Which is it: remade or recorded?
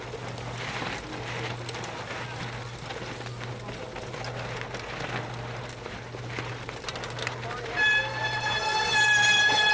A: recorded